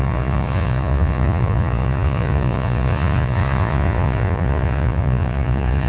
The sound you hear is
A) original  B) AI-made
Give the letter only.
B